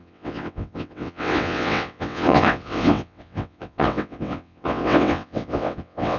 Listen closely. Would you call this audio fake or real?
fake